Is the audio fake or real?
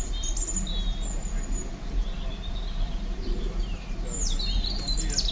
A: real